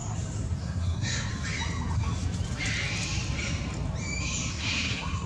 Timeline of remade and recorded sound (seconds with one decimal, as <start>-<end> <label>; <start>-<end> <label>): 0.0-0.6 recorded; 0.6-1.3 remade; 1.3-4.5 recorded; 4.5-5.3 remade